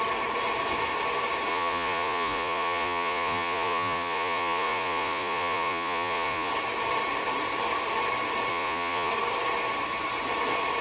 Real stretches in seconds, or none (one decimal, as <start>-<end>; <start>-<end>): 0.0-1.5; 6.5-8.5; 9.1-10.8